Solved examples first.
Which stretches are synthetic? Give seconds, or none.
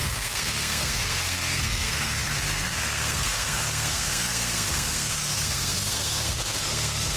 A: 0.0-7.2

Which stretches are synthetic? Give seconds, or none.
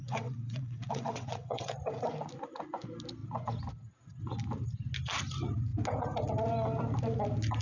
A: 0.0-1.7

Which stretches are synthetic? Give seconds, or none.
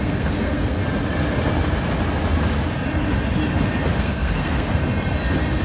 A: 0.0-0.8; 4.0-4.8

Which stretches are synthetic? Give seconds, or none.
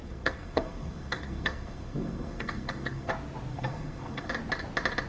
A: 0.0-3.1; 3.5-4.3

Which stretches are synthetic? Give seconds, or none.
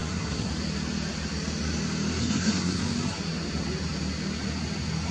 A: 0.0-0.5; 2.2-2.8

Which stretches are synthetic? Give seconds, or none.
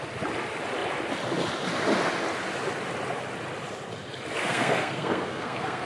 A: 4.4-5.9